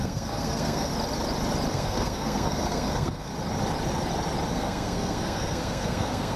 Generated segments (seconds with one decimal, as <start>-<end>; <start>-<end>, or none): 0.0-0.9; 1.7-3.3; 4.5-6.4